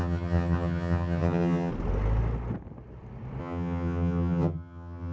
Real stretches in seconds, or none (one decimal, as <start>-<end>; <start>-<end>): 1.7-3.4